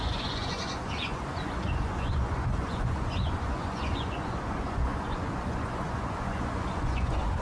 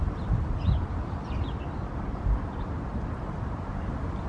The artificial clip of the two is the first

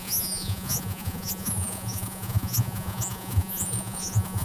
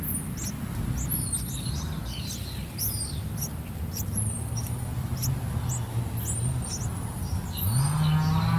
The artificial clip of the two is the first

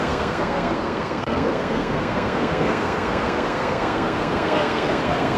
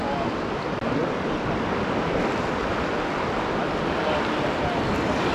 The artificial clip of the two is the first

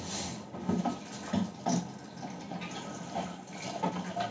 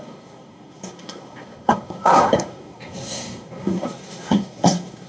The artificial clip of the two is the second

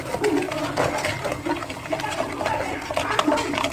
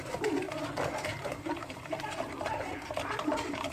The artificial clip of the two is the second